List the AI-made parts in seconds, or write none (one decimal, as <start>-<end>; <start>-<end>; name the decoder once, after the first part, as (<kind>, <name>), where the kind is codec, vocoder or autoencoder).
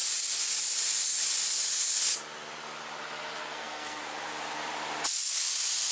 3.4-4.0 (codec, SNAC)